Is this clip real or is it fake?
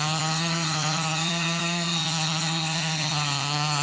fake